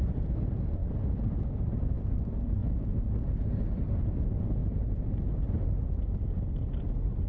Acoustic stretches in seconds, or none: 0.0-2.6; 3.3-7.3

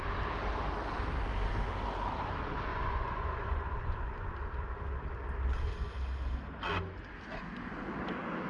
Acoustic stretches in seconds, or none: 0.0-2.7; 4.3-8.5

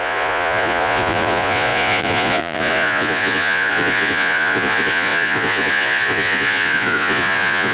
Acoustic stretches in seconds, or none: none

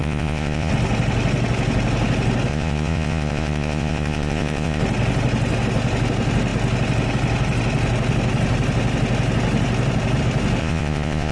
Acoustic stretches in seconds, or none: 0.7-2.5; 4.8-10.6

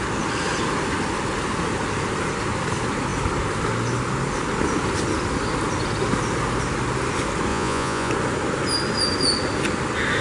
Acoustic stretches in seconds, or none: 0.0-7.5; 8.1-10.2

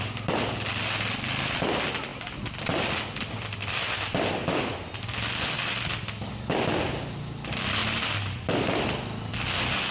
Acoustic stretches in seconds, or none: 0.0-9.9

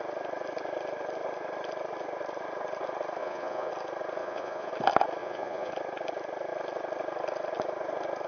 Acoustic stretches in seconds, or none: 0.0-3.2; 3.7-4.2; 4.7-5.2; 5.7-8.3